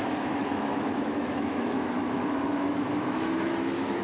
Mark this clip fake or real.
fake